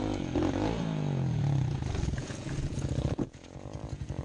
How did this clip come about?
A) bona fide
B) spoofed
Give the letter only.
B